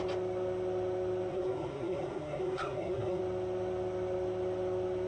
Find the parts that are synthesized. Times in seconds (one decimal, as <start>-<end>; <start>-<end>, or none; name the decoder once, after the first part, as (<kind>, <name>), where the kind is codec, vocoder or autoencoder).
1.3-3.2 (codec, SNAC)